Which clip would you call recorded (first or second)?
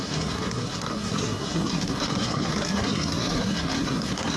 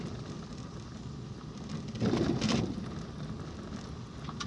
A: second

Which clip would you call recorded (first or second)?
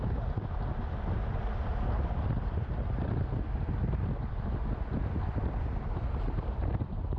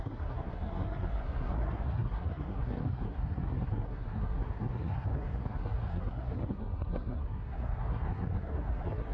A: first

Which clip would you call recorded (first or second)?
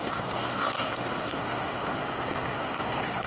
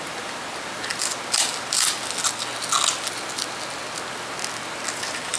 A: second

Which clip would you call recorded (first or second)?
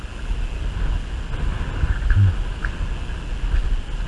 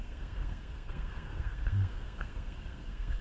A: first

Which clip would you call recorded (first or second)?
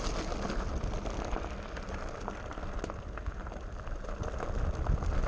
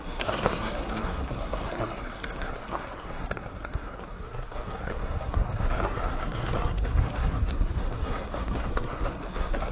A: first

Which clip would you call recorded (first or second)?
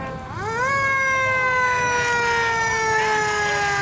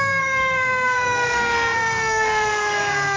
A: first